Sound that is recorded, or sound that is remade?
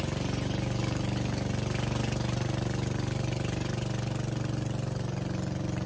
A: recorded